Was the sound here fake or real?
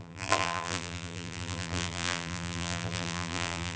fake